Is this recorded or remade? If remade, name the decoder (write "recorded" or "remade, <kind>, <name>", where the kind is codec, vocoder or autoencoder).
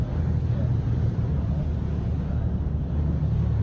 recorded